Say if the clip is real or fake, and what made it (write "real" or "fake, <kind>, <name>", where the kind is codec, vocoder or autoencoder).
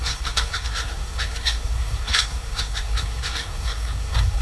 fake, codec, SNAC